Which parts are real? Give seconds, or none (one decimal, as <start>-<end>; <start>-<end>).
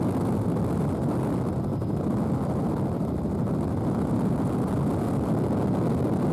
0.0-6.3